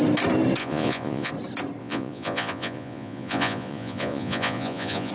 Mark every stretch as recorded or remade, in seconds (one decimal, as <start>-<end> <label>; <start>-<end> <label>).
0.0-0.6 recorded; 0.6-1.3 remade; 1.3-1.8 recorded; 1.8-5.1 remade